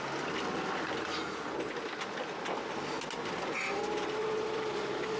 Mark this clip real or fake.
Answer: real